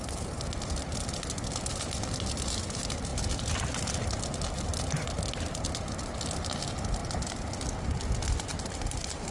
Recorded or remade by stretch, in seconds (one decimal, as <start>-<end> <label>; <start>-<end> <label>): 0.0-8.5 recorded; 8.5-9.3 remade